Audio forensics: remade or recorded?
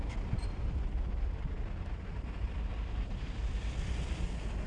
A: recorded